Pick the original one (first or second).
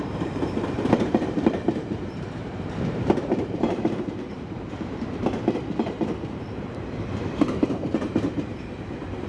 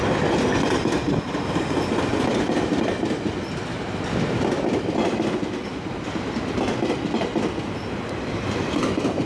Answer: second